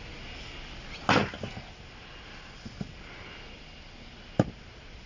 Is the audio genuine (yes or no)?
yes